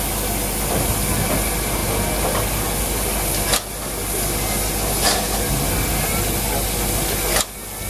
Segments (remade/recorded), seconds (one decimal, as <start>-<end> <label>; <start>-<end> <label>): 0.0-7.9 recorded